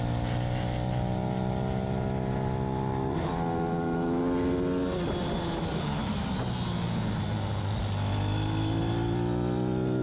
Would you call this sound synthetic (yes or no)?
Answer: no